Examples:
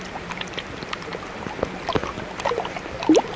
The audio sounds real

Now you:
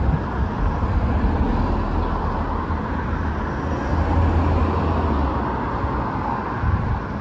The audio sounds real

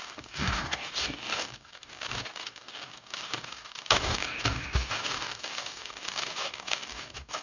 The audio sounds fake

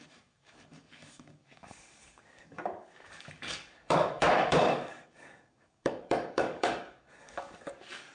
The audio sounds fake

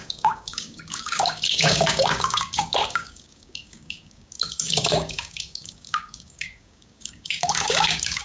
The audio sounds fake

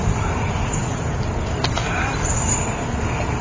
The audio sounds real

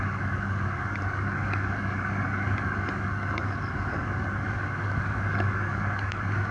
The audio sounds fake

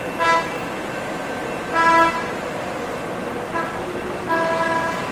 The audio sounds real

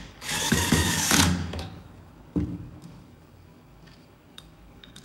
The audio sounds fake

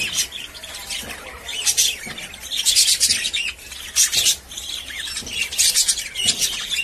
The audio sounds real